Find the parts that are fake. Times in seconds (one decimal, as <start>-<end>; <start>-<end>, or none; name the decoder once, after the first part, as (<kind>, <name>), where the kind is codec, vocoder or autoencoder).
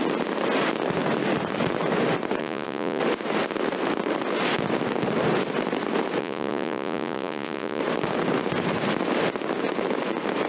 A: 2.4-3.0 (vocoder, Vocos); 6.2-7.8